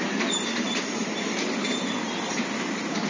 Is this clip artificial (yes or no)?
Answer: no